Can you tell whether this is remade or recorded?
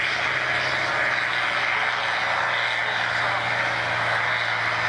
recorded